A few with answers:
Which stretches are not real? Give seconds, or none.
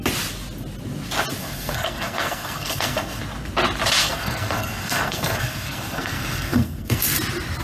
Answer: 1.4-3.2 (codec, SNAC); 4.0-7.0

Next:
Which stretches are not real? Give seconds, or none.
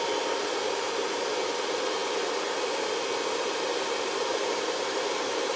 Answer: none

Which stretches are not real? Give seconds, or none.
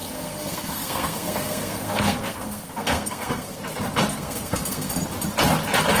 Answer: 0.0-3.6 (codec, SNAC); 4.1-4.9